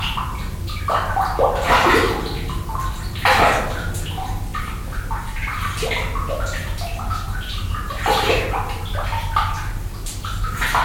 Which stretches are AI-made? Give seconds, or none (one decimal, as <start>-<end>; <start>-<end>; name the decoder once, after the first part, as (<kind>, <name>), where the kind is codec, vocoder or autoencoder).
none